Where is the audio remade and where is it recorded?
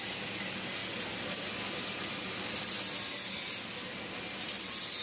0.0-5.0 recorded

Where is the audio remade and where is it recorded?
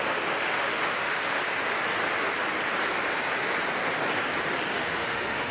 0.0-1.4 remade; 1.4-4.7 recorded; 4.7-5.5 remade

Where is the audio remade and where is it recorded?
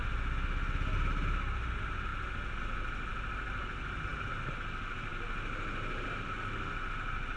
0.0-7.4 recorded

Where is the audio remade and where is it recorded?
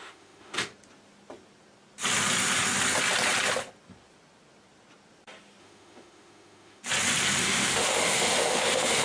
0.0-0.7 remade; 0.7-5.6 recorded; 5.6-6.8 remade; 6.8-7.4 recorded; 7.4-9.0 remade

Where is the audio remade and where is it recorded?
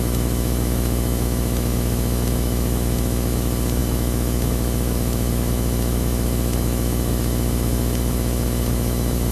0.0-9.3 remade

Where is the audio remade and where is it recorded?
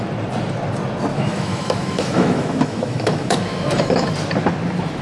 0.0-1.1 recorded; 1.1-4.1 remade; 4.1-5.0 recorded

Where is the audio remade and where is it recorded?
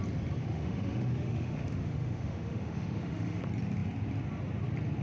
0.0-0.4 recorded; 0.4-3.4 remade; 3.4-5.0 recorded